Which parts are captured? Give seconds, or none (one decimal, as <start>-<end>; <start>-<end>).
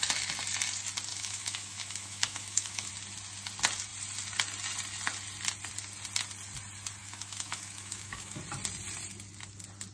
0.0-1.1; 2.9-7.0; 8.4-9.9